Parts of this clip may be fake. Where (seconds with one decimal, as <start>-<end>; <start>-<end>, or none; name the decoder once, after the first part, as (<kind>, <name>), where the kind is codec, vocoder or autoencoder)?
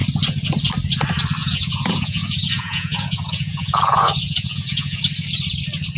1.4-5.0 (vocoder, Vocos)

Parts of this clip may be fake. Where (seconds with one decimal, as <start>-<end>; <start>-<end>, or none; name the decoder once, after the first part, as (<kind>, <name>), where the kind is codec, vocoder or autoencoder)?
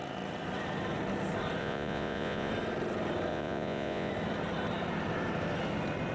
1.6-2.5 (vocoder, Vocos); 3.3-4.1